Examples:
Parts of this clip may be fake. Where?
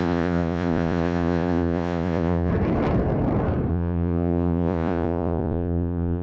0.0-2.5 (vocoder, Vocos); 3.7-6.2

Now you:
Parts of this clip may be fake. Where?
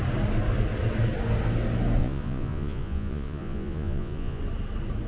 2.0-4.4 (vocoder, Vocos)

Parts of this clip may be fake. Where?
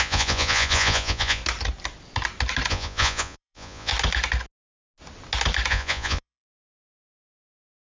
0.0-1.4 (vocoder, Vocos); 2.7-3.9; 5.7-8.0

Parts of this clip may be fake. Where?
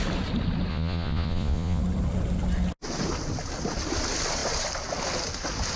0.7-1.8 (vocoder, Vocos)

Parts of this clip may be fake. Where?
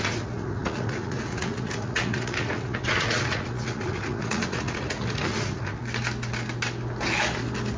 0.0-5.8 (vocoder, Vocos)